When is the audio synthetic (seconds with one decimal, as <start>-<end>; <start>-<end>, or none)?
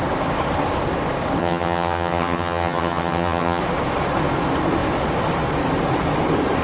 1.4-3.6